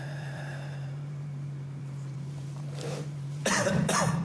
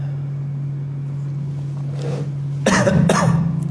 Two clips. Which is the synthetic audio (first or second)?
first